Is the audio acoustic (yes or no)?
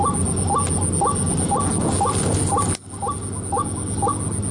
yes